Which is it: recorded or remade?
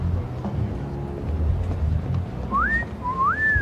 recorded